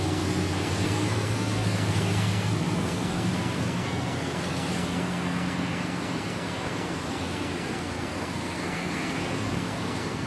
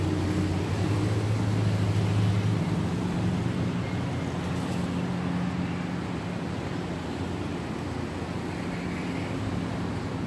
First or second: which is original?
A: second